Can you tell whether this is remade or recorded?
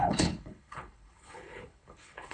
remade